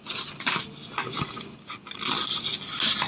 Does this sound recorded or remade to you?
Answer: recorded